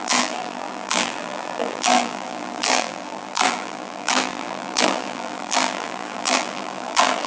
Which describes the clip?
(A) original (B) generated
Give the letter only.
B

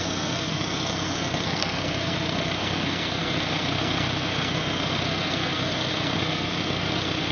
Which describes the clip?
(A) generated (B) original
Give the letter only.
A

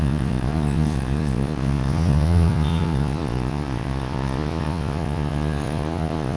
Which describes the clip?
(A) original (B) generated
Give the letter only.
B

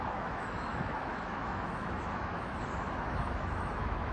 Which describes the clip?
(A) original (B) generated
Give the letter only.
B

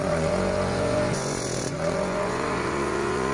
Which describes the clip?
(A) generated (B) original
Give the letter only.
A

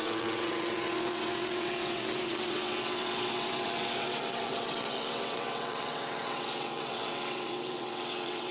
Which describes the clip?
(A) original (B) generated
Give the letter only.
B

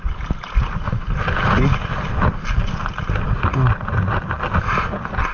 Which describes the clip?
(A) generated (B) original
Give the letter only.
B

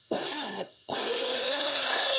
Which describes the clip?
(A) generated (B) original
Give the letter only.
A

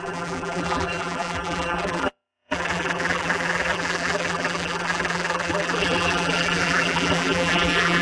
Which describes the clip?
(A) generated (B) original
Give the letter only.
A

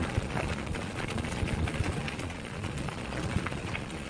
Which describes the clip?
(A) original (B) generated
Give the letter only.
B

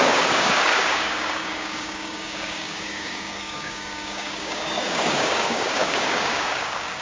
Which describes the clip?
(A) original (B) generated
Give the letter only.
B